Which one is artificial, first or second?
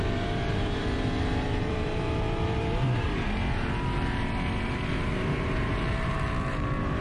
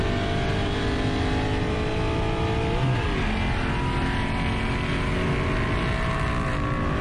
first